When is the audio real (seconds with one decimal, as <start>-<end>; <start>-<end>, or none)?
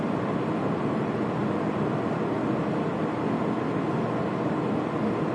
1.4-4.6